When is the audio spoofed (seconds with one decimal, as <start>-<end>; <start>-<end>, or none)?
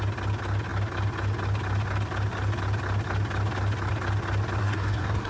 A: 4.6-5.3